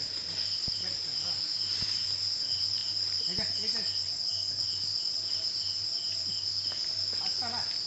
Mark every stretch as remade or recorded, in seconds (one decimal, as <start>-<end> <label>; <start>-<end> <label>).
0.0-7.9 recorded